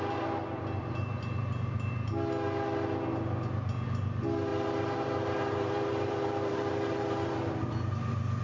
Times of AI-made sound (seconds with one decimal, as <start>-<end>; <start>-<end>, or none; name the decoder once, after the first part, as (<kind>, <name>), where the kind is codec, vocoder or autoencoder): 0.8-2.1 (vocoder, BigVGAN v2); 4.5-7.9